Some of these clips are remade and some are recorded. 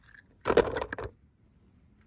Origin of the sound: recorded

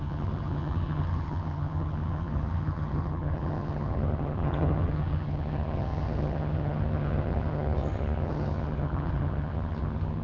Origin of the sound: remade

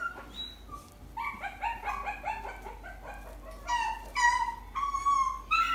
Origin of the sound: recorded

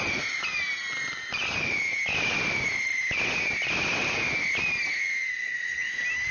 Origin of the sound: recorded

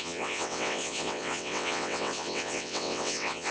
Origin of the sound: remade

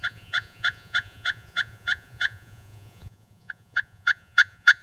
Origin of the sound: remade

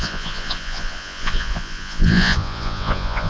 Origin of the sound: remade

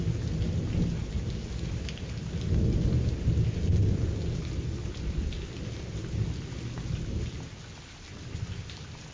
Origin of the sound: recorded